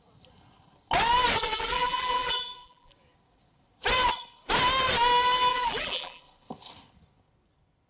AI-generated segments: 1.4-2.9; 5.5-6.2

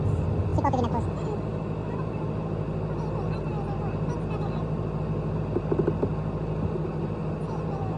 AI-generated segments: none

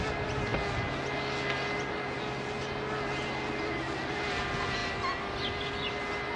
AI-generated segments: none

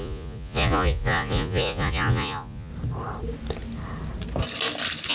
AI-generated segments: 0.0-2.7

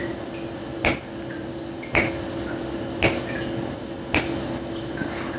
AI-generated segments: none